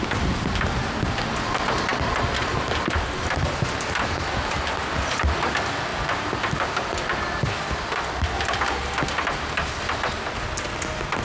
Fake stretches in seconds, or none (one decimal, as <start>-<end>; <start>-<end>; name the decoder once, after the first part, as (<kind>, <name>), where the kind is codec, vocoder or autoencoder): none